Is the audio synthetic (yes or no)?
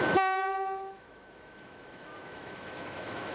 yes